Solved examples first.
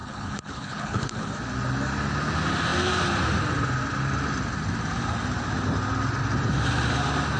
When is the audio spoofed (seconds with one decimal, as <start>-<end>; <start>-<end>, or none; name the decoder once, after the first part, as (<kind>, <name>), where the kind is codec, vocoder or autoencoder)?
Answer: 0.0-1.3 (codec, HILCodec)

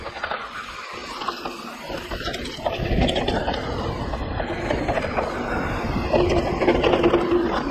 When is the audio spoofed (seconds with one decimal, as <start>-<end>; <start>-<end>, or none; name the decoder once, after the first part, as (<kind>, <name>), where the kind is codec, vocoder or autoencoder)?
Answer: none

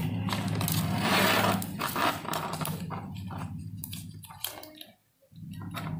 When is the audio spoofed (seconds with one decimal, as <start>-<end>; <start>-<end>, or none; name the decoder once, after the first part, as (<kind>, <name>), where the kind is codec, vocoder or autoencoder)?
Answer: none

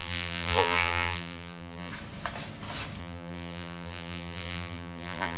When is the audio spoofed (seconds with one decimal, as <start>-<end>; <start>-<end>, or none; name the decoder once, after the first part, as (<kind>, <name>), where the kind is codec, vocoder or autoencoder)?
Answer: 0.0-1.9 (vocoder, BigVGAN v2); 3.0-5.4